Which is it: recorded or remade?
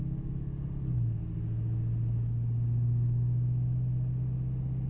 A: recorded